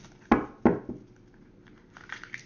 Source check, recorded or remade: recorded